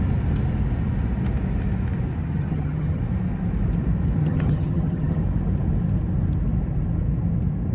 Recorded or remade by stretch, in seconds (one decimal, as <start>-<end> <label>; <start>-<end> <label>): 0.0-2.2 recorded; 2.2-3.0 remade; 3.0-4.2 recorded; 4.2-5.2 remade; 5.2-7.7 recorded